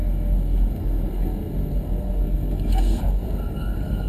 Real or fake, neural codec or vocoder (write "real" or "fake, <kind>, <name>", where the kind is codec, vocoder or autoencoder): fake, codec, SNAC